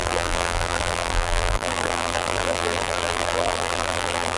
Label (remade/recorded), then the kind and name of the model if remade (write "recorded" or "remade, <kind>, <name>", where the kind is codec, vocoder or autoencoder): remade, vocoder, BigVGAN v2